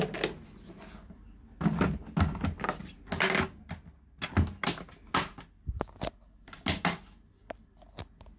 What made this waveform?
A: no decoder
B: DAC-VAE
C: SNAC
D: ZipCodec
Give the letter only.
A